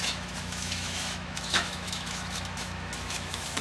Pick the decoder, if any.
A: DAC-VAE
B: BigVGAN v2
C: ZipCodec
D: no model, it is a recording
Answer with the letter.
A